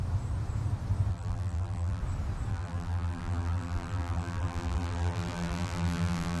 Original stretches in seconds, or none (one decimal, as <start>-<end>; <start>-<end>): 0.0-1.1; 2.0-2.5

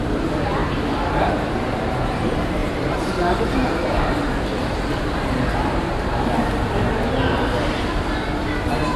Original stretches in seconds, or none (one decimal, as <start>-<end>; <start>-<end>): 0.0-0.6; 1.3-2.6; 5.8-9.0

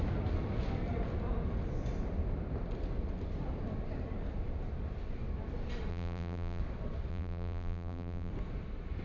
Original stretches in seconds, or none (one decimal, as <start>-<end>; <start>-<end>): 0.0-5.9; 6.6-7.1; 8.3-9.0